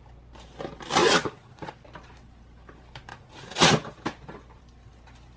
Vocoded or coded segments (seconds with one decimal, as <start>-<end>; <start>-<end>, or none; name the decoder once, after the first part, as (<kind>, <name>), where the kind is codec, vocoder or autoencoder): 1.0-1.7 (vocoder, Vocos); 3.1-3.7